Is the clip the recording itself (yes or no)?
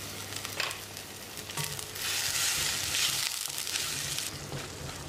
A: yes